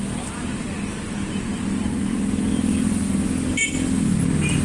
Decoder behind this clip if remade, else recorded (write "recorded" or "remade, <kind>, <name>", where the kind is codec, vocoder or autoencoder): recorded